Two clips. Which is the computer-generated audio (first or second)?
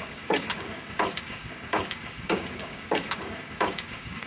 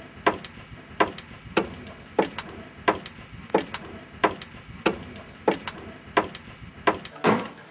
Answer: first